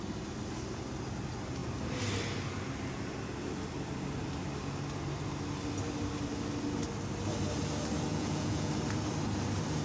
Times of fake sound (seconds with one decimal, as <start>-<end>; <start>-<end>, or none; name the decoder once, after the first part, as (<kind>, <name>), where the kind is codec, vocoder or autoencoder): 8.1-8.7 (vocoder, Vocos)